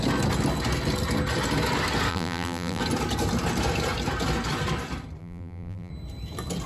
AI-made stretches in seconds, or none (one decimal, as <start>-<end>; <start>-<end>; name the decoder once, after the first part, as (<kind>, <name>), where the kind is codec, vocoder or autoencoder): 2.1-2.8 (vocoder, BigVGAN v2); 5.2-5.9